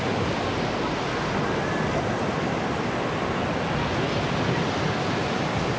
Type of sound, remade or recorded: recorded